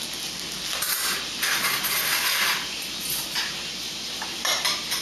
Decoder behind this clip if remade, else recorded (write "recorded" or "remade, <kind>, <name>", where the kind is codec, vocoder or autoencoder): recorded